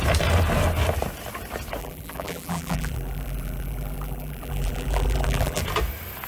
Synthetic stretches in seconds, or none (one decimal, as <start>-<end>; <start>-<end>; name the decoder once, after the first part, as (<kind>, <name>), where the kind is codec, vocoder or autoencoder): 1.8-5.6 (vocoder, BigVGAN v2)